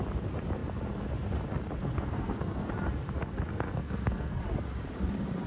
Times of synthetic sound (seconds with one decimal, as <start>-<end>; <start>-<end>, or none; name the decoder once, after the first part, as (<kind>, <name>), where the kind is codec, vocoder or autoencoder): 1.8-2.7 (codec, SNAC); 3.5-4.4